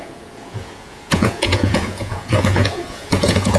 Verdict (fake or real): fake